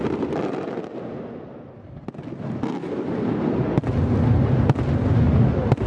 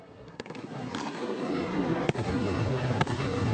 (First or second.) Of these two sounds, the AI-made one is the second